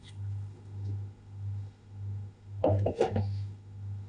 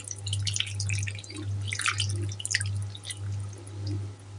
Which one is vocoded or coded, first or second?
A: first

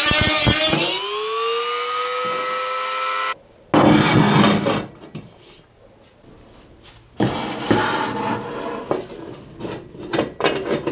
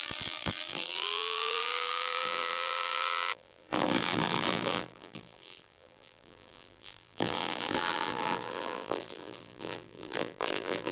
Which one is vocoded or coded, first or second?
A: second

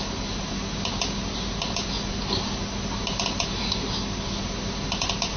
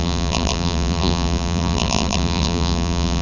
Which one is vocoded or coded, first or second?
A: second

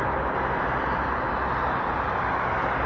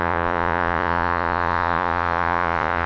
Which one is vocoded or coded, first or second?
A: second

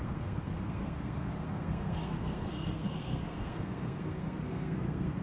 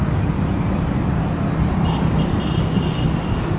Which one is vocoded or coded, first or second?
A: first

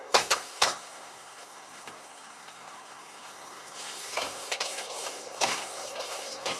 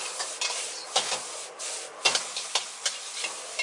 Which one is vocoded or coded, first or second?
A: first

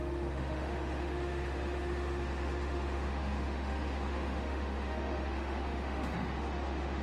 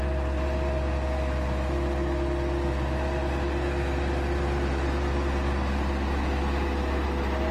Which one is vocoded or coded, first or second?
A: first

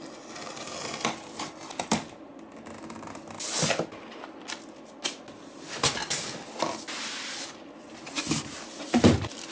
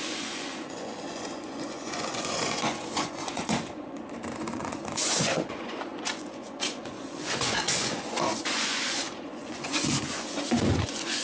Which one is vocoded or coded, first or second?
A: second